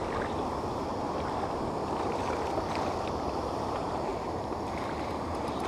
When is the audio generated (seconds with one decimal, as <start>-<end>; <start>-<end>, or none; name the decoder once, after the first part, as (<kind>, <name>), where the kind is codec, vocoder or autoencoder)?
2.6-4.1 (vocoder, BigVGAN v2); 5.0-5.7